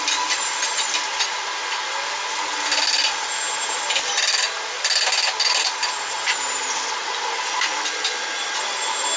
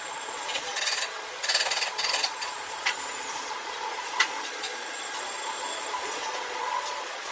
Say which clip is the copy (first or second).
second